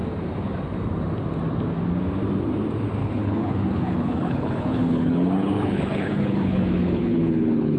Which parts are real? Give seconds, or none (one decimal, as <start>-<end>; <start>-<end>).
0.0-3.0